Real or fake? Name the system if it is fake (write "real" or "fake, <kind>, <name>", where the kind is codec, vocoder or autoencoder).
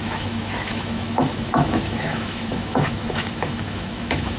fake, autoencoder, DAC-VAE